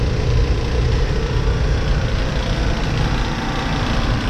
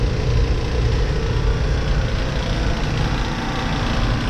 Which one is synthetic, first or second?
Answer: first